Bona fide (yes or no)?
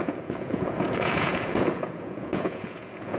no